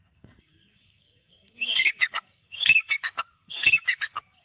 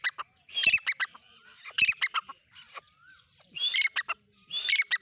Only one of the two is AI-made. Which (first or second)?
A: first